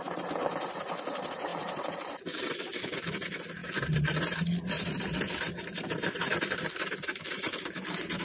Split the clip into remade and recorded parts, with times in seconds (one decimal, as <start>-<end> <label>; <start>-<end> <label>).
0.0-8.2 remade